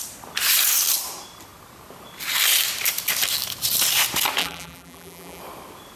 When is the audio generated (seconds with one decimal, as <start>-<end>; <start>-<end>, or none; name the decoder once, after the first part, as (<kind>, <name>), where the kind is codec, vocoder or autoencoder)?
4.4-5.4 (vocoder, BigVGAN v2)